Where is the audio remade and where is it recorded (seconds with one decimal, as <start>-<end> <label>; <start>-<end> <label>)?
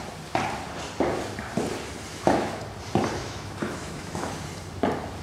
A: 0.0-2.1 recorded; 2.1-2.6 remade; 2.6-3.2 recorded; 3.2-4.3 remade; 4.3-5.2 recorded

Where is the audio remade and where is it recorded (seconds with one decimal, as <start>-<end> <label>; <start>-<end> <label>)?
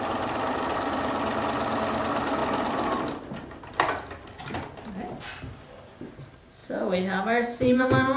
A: 0.0-6.6 recorded; 6.6-8.2 remade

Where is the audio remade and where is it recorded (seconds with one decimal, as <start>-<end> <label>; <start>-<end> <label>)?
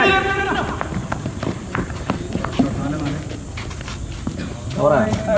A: 0.0-1.0 recorded; 1.0-3.0 remade; 3.0-5.4 recorded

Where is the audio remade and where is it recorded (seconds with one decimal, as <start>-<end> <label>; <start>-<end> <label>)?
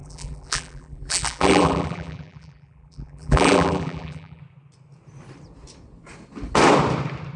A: 0.0-4.4 remade; 4.4-7.4 recorded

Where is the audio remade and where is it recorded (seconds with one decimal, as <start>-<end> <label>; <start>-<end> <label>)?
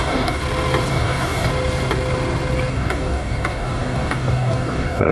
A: 0.0-0.4 remade; 0.4-0.9 recorded; 0.9-1.5 remade; 1.5-2.7 recorded; 2.7-5.1 remade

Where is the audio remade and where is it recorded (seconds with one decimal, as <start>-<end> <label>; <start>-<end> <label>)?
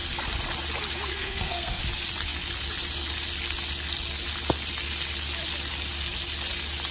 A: 0.0-1.1 recorded; 1.1-1.8 remade; 1.8-6.9 recorded